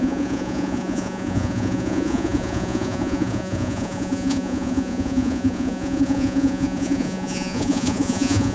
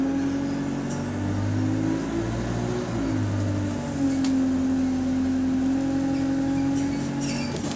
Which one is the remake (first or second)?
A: first